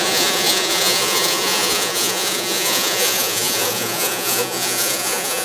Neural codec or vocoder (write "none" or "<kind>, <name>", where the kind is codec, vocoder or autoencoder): vocoder, Vocos